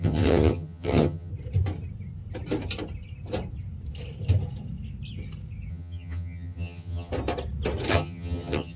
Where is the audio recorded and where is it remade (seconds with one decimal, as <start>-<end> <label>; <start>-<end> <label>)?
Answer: 0.0-1.3 remade; 1.3-5.7 recorded; 5.7-7.1 remade; 7.1-7.9 recorded; 7.9-8.8 remade